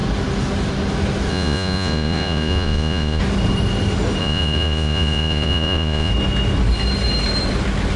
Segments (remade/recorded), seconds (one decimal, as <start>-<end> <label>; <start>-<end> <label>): 0.0-1.3 recorded; 1.3-3.2 remade; 3.2-4.2 recorded; 4.2-6.1 remade; 6.1-8.0 recorded